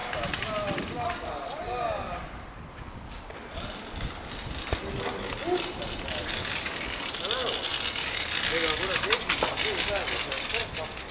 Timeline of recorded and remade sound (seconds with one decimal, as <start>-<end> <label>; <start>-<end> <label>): 0.0-11.1 recorded